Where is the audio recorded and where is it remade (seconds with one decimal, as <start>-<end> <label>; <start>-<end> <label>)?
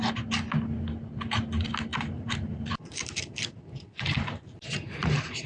0.0-1.9 recorded; 1.9-5.5 remade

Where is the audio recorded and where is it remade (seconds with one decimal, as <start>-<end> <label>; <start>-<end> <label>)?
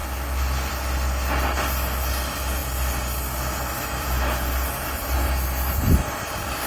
0.0-6.7 recorded